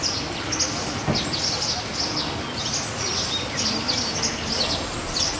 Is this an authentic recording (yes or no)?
yes